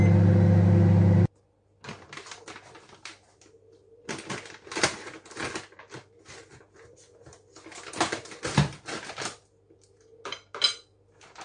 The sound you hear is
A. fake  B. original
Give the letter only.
B